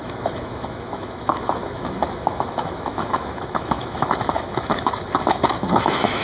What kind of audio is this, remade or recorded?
remade